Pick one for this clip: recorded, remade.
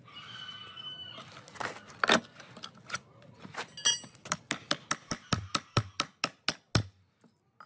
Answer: recorded